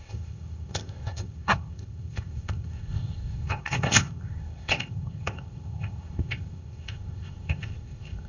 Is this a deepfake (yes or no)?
yes